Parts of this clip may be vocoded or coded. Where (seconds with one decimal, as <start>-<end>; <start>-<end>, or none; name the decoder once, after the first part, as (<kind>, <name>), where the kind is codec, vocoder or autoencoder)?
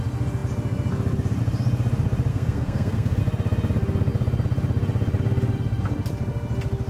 2.3-3.2 (codec, SNAC)